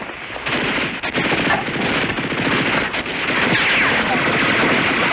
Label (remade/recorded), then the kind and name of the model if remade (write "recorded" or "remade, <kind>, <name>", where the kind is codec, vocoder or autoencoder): recorded